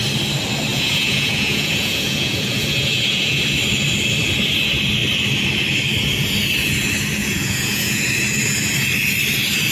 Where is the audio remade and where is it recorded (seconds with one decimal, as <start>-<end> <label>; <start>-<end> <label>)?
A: 0.0-0.7 recorded; 0.7-3.4 remade; 3.4-7.2 recorded; 7.2-8.0 remade; 8.0-9.7 recorded

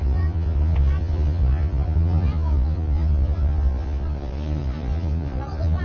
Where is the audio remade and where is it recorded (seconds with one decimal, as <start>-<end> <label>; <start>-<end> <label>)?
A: 0.0-5.8 remade

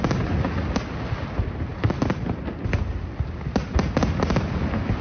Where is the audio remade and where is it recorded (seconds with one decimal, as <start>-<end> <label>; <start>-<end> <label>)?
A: 0.0-5.0 recorded

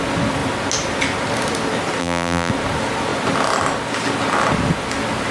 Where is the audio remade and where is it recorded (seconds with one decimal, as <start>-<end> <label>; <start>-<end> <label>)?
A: 0.0-2.0 recorded; 2.0-2.5 remade; 2.5-5.3 recorded

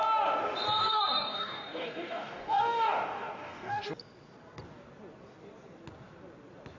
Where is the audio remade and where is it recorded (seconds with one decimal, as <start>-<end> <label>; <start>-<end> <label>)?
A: 0.0-0.8 recorded; 0.8-3.8 remade; 3.8-6.8 recorded

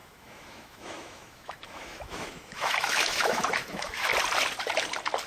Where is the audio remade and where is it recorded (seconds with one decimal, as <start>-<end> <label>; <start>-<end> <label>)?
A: 0.0-4.1 remade; 4.1-5.3 recorded

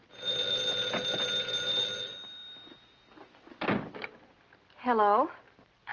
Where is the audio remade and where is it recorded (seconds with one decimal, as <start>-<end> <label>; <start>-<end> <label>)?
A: 0.0-5.9 recorded

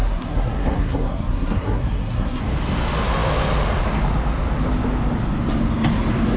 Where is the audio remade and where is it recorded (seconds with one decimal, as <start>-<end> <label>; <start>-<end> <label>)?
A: 0.0-2.4 remade; 2.4-6.4 recorded